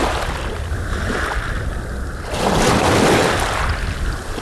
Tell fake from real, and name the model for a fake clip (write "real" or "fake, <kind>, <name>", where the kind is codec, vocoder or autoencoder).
real